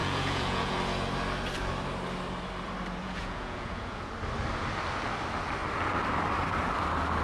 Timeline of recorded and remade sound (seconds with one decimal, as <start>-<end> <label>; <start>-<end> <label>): 0.0-0.7 remade; 0.7-3.0 recorded; 3.0-4.1 remade; 4.1-7.2 recorded